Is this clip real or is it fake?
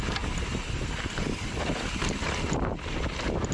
real